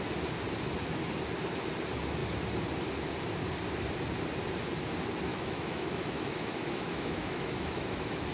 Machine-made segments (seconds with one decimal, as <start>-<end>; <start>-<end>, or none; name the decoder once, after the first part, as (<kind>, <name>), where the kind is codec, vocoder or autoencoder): 5.3-8.3 (autoencoder, DAC-VAE)